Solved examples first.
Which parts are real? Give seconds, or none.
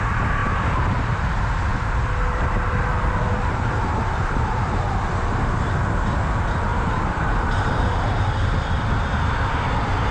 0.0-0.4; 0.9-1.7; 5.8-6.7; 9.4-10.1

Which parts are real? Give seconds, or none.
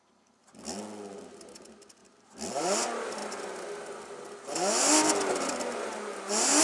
0.0-6.6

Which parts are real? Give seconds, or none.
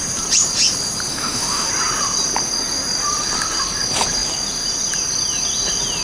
0.0-1.1; 1.7-6.0